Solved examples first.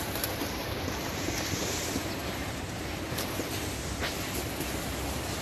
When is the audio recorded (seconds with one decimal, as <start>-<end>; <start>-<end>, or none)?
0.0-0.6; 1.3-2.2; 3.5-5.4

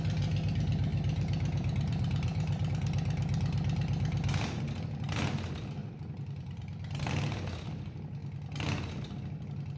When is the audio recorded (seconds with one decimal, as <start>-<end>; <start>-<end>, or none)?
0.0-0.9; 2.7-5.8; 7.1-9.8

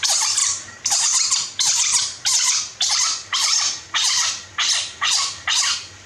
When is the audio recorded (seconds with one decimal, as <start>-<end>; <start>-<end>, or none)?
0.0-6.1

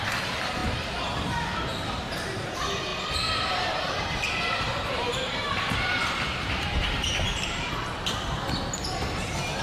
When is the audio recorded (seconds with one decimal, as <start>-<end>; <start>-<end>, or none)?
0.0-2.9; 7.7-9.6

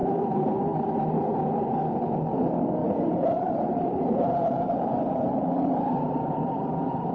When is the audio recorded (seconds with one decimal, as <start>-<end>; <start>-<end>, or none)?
0.6-2.8